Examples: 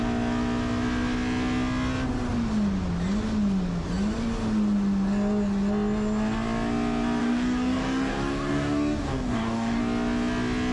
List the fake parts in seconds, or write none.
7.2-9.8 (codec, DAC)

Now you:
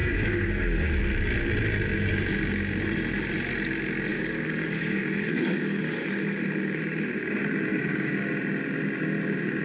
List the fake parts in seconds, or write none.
0.0-1.0 (codec, DAC); 4.1-5.8; 7.7-8.3

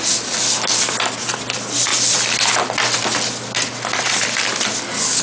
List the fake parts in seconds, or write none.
none

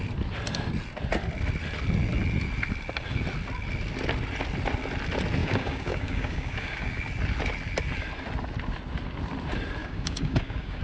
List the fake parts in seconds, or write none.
5.4-7.0 (codec, DAC); 9.8-10.8

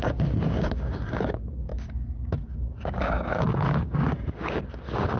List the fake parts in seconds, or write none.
0.0-5.2 (codec, DAC)